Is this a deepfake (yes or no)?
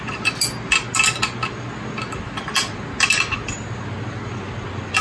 no